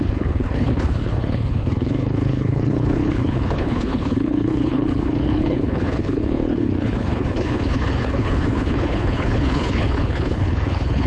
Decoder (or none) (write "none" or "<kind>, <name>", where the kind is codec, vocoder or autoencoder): codec, HILCodec